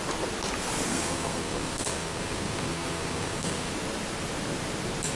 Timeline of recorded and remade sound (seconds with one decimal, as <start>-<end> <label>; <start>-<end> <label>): 0.0-0.9 recorded; 0.9-3.7 remade; 3.7-5.1 recorded